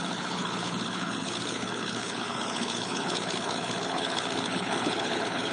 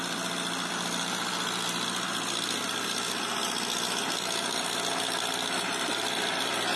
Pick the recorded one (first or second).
second